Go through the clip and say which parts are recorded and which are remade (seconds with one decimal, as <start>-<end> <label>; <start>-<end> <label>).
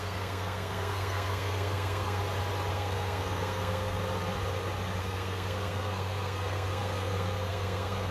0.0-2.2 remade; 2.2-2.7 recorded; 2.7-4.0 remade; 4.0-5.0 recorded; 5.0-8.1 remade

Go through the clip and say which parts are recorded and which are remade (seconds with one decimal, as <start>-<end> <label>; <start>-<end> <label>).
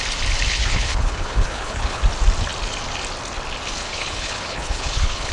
0.0-0.5 recorded; 0.5-2.0 remade; 2.0-3.8 recorded; 3.8-5.3 remade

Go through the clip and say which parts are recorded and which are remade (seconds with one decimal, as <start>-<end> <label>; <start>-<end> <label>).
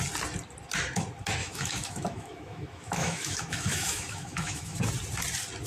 0.0-1.4 recorded; 1.4-4.8 remade; 4.8-5.7 recorded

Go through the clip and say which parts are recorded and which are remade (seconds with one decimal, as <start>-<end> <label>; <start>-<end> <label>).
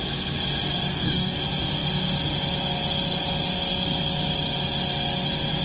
0.0-0.9 recorded; 0.9-1.4 remade; 1.4-5.6 recorded